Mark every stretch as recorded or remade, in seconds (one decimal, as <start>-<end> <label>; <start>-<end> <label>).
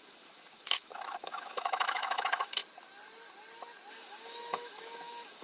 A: 0.0-2.6 remade; 2.6-3.9 recorded; 3.9-5.4 remade